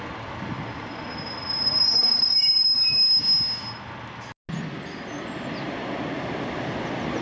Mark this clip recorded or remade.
recorded